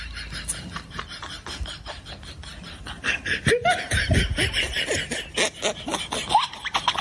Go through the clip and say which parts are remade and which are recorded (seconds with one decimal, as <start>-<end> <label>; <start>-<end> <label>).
0.0-2.5 recorded; 2.5-3.2 remade; 3.2-4.3 recorded; 4.3-5.0 remade; 5.0-7.0 recorded